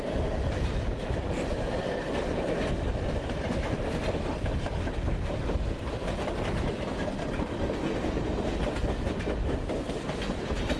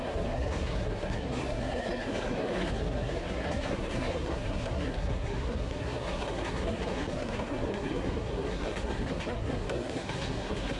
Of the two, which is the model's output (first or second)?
second